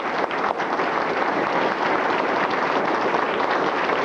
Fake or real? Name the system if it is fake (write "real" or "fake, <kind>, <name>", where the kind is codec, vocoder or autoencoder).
real